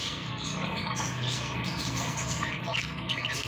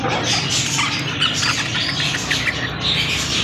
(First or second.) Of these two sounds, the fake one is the first